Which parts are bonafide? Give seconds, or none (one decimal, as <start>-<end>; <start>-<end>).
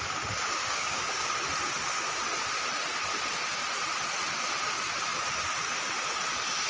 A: 0.0-0.6; 1.3-6.7